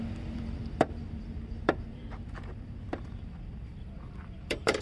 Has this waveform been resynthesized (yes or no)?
yes